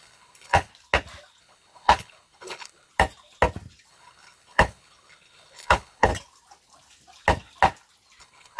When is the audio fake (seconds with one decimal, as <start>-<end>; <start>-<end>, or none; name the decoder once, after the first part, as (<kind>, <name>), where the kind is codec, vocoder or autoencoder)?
0.0-0.7 (codec, HILCodec); 1.4-2.9; 3.9-6.1; 8.2-8.6